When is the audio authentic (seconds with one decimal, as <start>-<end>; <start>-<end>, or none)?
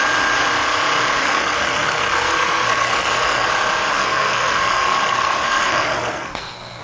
0.0-1.2; 3.5-3.9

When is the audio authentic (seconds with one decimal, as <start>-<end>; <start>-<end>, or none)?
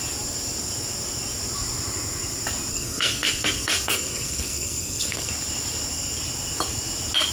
0.0-2.7; 5.3-7.3